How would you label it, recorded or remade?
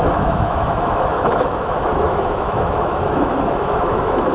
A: remade